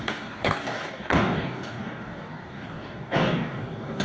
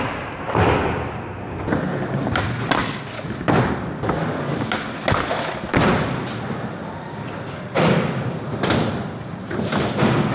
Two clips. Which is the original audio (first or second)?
second